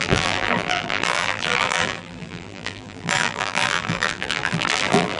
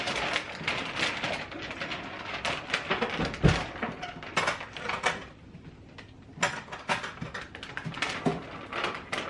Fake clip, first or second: first